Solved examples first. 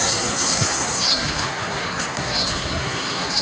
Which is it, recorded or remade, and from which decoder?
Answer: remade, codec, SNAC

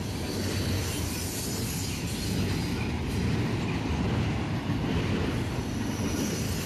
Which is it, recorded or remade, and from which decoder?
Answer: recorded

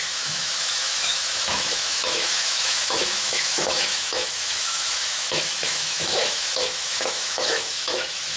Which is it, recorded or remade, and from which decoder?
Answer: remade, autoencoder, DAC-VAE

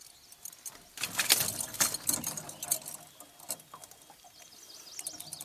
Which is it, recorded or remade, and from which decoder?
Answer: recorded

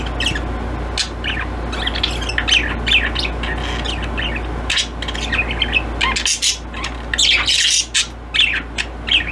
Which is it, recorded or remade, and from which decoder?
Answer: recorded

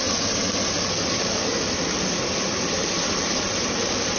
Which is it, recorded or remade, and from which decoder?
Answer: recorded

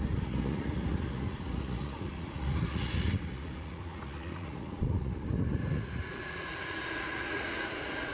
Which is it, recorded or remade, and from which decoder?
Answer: remade, vocoder, Vocos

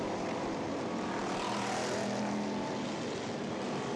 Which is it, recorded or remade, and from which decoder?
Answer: remade, vocoder, BigVGAN v2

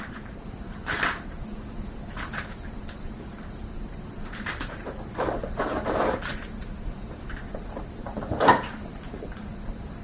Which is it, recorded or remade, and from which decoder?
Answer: remade, vocoder, BigVGAN v2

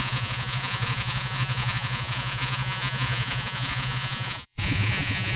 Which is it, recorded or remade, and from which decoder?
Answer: remade, vocoder, Vocos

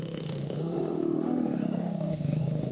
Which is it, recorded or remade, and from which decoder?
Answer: remade, autoencoder, DAC-VAE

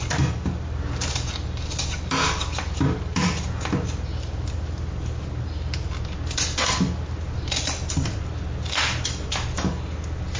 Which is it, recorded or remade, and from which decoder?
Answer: recorded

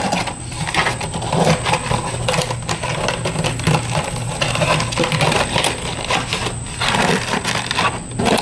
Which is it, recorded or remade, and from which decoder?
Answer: recorded